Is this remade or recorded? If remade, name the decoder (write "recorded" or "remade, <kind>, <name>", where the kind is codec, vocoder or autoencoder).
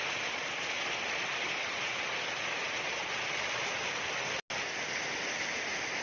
recorded